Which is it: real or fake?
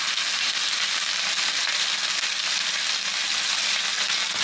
real